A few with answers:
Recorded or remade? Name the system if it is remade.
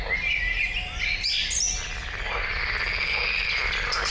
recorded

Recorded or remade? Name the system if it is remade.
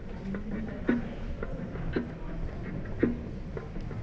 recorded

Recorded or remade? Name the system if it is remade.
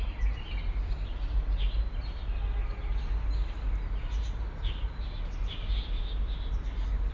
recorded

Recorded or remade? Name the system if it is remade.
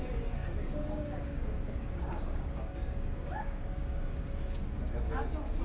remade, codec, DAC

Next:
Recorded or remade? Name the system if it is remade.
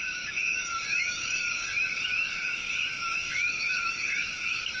remade, codec, DAC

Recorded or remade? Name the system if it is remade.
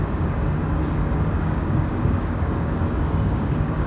remade, codec, DAC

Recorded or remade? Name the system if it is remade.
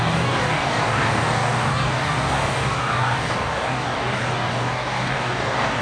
remade, codec, DAC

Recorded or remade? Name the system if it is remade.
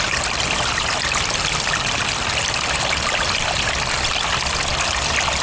recorded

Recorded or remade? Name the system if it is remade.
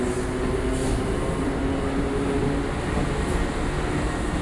recorded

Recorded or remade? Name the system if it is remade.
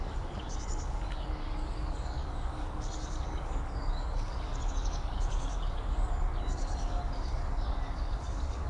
remade, codec, DAC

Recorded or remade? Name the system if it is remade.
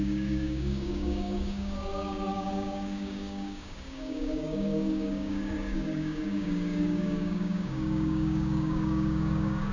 remade, codec, DAC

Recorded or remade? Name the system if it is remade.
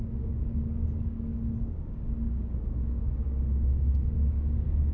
remade, codec, DAC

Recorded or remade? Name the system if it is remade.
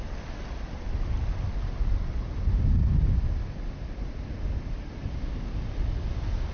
recorded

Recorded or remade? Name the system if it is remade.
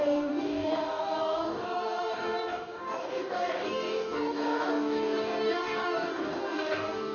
remade, codec, DAC